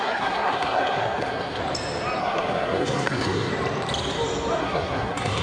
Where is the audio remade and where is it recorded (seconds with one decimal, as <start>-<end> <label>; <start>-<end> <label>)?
0.0-1.6 remade; 1.6-2.2 recorded; 2.2-3.5 remade; 3.5-4.6 recorded; 4.6-5.4 remade